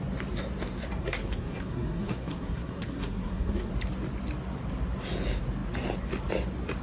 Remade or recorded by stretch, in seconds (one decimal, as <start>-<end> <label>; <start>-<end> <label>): 0.0-1.0 recorded; 1.0-3.7 remade; 3.7-6.8 recorded